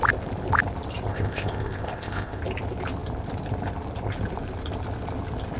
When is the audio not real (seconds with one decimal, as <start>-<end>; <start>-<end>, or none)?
1.1-2.4